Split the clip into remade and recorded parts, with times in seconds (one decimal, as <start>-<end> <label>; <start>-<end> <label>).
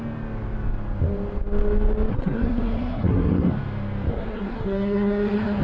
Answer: 0.0-2.1 recorded; 2.1-3.5 remade; 3.5-4.1 recorded; 4.1-5.6 remade